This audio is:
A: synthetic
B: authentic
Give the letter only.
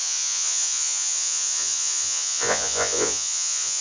A